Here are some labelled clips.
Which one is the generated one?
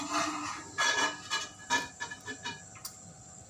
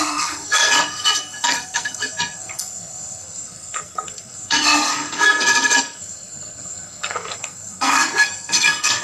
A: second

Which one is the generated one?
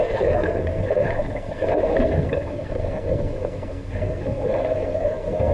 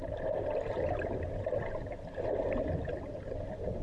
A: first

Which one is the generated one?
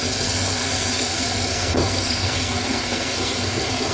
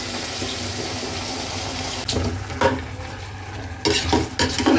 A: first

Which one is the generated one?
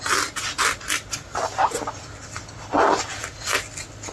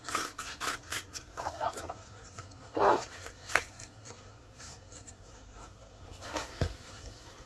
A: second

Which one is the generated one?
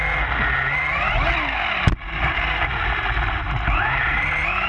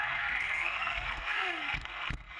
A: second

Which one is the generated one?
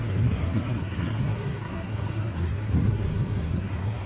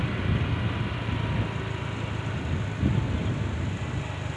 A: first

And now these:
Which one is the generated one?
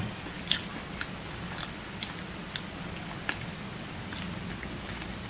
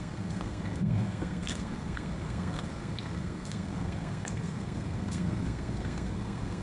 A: second